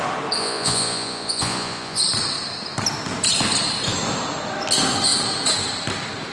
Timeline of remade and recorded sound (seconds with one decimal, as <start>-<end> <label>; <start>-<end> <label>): 0.0-0.4 recorded; 0.4-2.0 remade; 2.0-6.3 recorded